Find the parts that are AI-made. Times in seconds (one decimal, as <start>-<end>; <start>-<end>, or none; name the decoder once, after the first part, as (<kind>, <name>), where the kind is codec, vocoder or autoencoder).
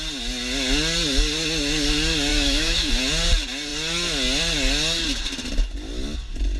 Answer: 2.3-2.9 (autoencoder, DAC-VAE)